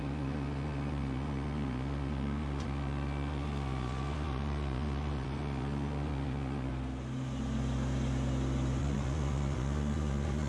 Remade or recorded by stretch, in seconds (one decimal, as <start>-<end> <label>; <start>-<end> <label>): 0.0-6.7 remade; 6.7-8.8 recorded; 8.8-10.5 remade